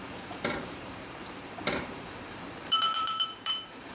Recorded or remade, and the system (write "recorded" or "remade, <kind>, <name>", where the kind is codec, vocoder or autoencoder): remade, vocoder, BigVGAN v2